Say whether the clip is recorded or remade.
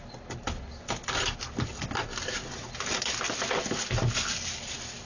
recorded